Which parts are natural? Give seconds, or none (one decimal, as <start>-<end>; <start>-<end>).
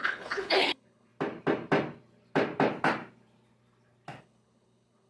1.1-4.2